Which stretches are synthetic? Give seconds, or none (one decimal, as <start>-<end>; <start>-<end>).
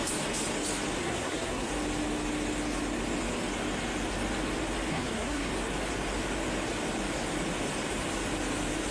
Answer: 1.0-1.7; 4.9-5.5